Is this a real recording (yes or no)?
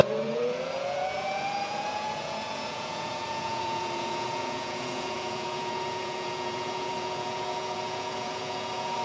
no